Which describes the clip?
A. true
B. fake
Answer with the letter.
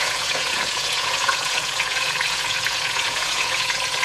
B